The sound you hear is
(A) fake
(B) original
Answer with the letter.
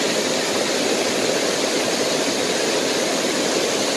A